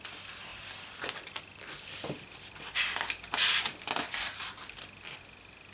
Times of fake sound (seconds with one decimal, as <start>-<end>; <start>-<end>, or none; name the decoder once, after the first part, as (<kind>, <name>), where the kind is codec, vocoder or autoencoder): none